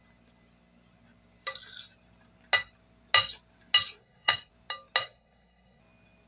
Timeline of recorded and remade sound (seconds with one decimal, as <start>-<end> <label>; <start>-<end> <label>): 0.0-4.0 recorded; 4.0-4.5 remade; 4.5-5.0 recorded; 5.0-5.8 remade; 5.8-6.3 recorded